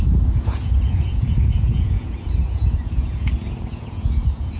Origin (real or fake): fake